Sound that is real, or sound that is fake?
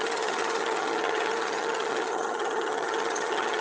fake